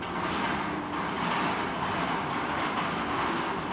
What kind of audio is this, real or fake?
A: real